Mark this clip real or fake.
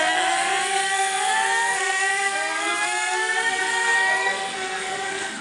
fake